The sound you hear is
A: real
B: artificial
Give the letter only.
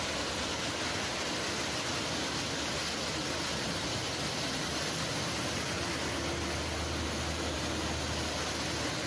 A